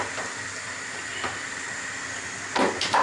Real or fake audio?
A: real